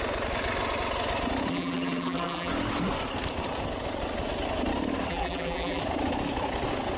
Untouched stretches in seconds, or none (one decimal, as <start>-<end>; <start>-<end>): 0.0-1.5; 2.5-5.1; 5.8-7.0